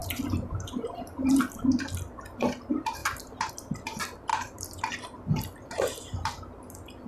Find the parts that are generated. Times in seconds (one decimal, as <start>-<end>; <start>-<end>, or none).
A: 0.0-1.3; 3.0-3.5; 4.3-4.9